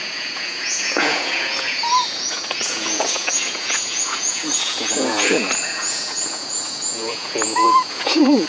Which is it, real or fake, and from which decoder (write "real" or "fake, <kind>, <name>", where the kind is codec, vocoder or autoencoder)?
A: fake, vocoder, Vocos